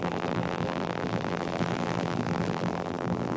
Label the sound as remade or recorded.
remade